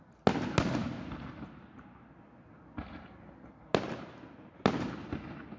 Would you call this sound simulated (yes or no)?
no